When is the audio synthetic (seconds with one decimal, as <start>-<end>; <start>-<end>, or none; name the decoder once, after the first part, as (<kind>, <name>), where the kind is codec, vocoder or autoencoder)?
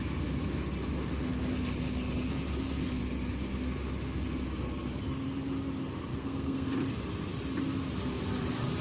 6.1-6.7 (codec, SNAC)